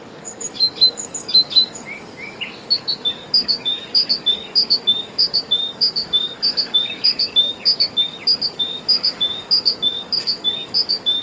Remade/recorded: remade